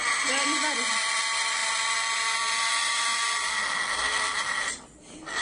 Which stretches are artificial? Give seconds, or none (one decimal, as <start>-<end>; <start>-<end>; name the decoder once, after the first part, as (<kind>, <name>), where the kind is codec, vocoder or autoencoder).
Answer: none